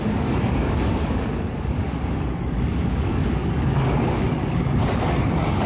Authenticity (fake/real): fake